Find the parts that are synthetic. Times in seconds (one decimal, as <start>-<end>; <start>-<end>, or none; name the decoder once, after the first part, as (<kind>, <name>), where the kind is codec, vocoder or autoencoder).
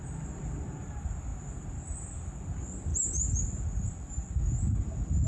none